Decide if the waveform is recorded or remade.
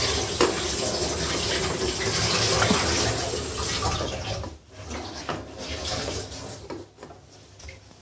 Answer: recorded